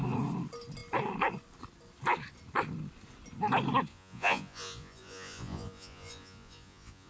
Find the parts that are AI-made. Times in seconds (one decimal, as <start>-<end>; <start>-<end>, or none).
3.9-7.1